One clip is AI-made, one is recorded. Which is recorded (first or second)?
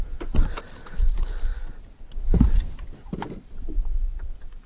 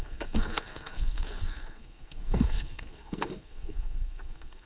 first